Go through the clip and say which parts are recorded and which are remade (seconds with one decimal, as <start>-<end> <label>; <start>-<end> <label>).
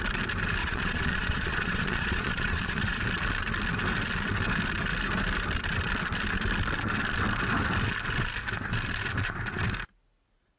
0.0-0.6 recorded; 0.6-3.0 remade; 3.0-10.6 recorded